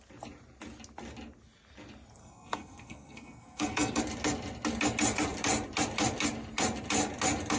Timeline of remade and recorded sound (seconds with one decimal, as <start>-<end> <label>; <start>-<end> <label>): 0.0-2.2 recorded; 2.2-4.0 remade; 4.0-7.6 recorded